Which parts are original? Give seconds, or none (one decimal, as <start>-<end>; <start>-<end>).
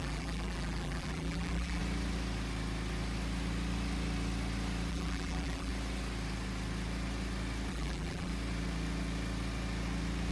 1.8-4.9; 5.7-7.7; 8.3-10.3